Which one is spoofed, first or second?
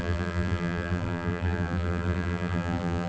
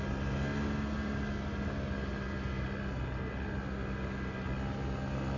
first